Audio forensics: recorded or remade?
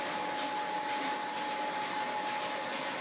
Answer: recorded